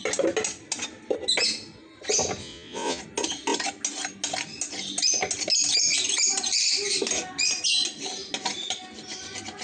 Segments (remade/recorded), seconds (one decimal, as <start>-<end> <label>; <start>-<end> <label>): 0.0-2.4 recorded; 2.4-3.0 remade; 3.0-9.6 recorded